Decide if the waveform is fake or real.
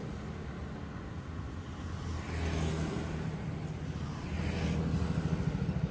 real